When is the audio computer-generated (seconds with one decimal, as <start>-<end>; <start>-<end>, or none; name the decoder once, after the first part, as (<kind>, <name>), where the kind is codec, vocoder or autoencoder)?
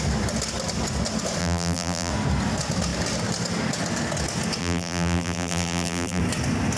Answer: 1.4-2.1 (vocoder, BigVGAN v2); 4.6-6.2